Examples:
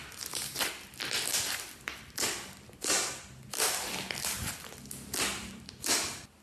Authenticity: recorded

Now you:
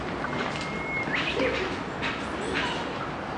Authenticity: recorded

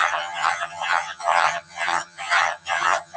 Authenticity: remade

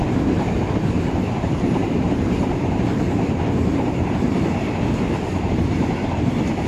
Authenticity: remade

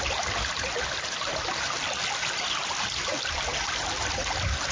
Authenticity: recorded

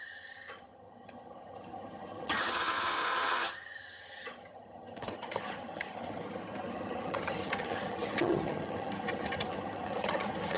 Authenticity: remade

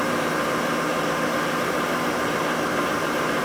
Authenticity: remade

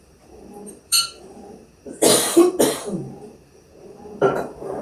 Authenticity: remade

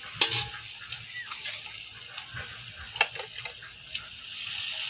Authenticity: recorded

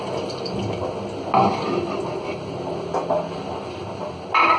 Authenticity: recorded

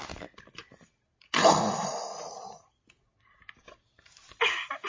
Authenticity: remade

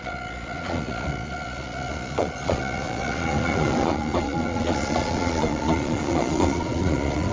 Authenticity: remade